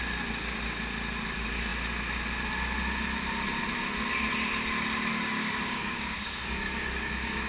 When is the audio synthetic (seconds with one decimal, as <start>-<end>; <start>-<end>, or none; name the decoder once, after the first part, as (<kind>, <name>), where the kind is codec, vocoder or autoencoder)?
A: 5.1-7.5 (codec, DAC)

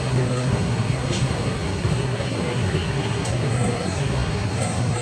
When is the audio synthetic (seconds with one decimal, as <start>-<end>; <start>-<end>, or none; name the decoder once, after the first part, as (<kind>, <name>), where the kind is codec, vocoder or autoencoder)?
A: 0.0-5.0 (codec, SNAC)

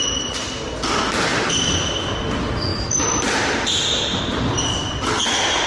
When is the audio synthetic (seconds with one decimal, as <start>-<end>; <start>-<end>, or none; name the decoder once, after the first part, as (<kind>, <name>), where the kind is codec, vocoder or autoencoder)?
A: 2.7-4.2 (vocoder, BigVGAN v2)

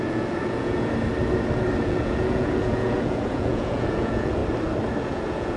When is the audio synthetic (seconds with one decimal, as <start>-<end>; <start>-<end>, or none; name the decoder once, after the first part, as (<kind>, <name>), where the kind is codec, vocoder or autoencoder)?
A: 0.0-0.9 (vocoder, Vocos); 1.8-4.4; 5.0-5.6

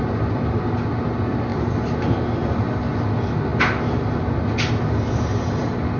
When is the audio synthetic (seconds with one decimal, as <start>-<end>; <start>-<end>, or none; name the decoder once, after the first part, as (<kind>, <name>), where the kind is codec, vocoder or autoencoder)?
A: none